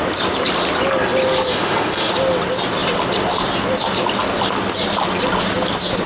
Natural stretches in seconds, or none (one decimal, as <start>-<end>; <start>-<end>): 0.0-1.5; 2.1-6.1